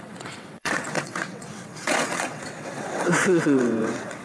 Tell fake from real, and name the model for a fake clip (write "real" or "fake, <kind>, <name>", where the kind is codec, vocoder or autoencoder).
fake, vocoder, WaveNeXt